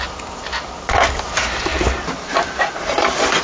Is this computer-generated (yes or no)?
no